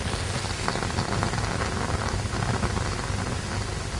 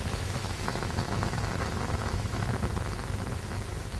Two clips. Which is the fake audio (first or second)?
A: second